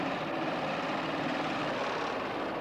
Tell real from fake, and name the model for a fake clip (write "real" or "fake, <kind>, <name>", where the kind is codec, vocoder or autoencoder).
real